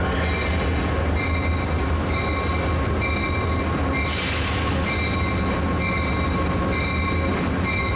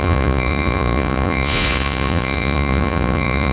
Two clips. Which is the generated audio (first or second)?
second